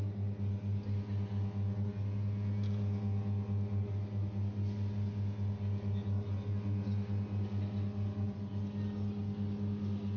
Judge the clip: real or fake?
real